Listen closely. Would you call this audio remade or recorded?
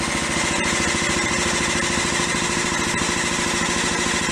recorded